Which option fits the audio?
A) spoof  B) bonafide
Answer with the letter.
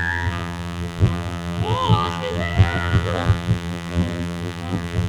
A